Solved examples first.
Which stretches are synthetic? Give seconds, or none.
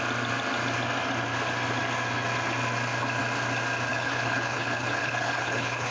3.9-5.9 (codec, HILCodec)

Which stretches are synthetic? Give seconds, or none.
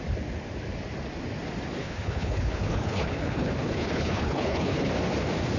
1.8-4.9 (codec, HILCodec)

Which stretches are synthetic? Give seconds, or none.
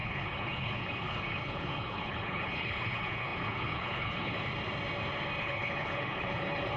0.0-4.5 (codec, HILCodec); 5.4-6.8